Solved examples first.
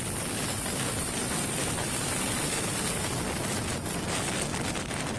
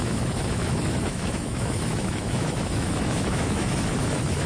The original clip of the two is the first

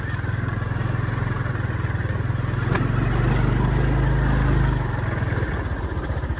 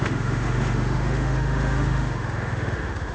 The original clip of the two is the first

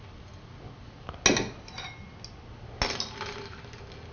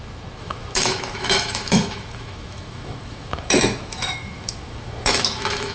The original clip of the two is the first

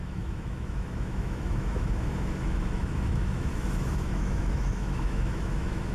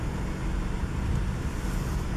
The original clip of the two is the second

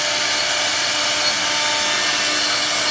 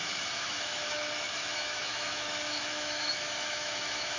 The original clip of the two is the first